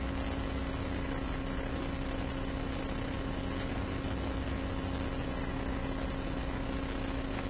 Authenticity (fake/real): real